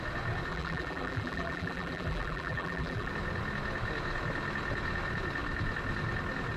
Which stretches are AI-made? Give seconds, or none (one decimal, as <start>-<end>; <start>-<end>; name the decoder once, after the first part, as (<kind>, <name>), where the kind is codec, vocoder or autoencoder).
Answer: 0.5-3.1 (vocoder, BigVGAN v2)